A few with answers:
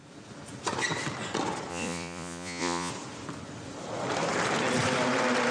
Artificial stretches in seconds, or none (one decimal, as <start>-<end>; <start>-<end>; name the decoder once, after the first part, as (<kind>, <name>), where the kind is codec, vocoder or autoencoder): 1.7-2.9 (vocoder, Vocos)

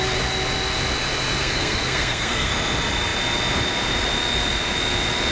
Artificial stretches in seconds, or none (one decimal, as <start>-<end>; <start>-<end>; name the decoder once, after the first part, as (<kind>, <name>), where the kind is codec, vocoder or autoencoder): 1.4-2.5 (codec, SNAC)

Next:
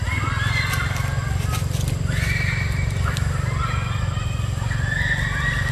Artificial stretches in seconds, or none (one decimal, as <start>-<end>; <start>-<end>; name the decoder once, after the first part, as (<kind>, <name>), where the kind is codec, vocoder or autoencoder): none